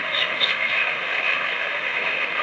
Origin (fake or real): fake